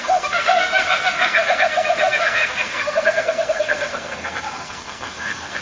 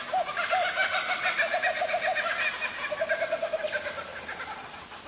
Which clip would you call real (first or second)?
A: second